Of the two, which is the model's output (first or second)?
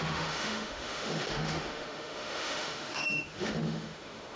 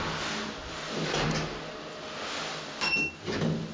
first